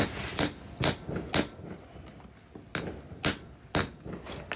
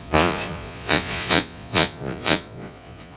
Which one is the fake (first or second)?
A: second